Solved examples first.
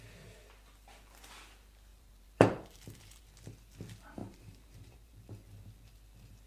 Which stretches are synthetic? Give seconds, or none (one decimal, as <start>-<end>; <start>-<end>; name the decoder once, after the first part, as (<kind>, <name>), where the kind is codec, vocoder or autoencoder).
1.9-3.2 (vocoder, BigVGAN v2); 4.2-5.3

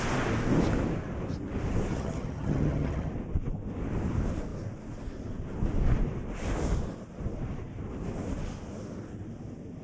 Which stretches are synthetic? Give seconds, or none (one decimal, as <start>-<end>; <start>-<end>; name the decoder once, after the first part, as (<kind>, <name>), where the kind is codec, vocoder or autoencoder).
1.9-3.1 (vocoder, HiFi-GAN)

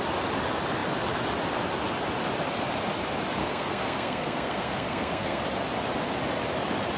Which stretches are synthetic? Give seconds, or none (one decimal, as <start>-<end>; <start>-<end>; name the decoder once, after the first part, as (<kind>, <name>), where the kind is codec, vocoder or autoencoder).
3.4-5.4 (codec, SNAC)